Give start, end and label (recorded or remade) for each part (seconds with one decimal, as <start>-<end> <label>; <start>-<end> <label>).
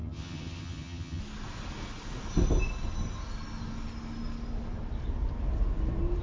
0.0-1.2 remade; 1.2-6.2 recorded